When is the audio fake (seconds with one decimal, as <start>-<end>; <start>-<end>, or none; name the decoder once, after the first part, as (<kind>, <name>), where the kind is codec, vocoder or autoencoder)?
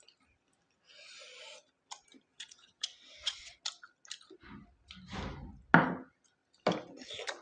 2.3-3.6 (vocoder, WaveNeXt)